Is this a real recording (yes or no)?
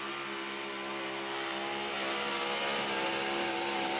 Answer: yes